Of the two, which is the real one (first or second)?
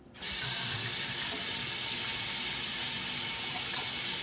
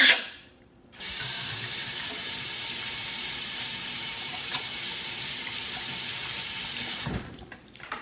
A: first